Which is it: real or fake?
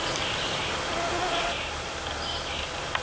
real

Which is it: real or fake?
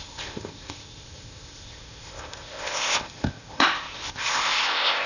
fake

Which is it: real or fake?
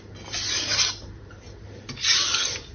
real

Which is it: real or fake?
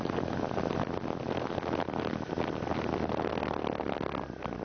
real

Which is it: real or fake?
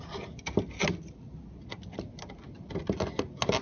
real